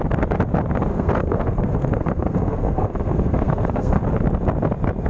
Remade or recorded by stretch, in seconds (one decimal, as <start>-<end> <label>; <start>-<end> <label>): 0.0-0.9 recorded; 0.9-4.0 remade; 4.0-5.1 recorded